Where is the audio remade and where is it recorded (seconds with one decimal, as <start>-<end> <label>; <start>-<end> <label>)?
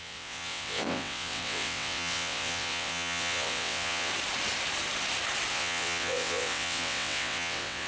0.0-4.1 remade; 4.1-5.5 recorded; 5.5-7.9 remade